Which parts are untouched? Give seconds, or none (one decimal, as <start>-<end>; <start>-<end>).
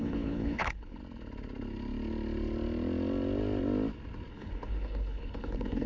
1.0-4.3